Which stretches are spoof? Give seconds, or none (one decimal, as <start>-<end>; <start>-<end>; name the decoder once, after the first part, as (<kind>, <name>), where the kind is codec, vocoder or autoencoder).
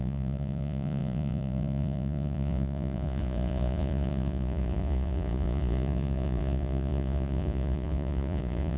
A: 0.0-8.8 (vocoder, Vocos)